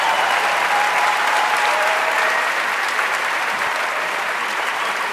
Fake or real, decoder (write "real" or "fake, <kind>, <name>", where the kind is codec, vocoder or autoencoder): fake, vocoder, BigVGAN v2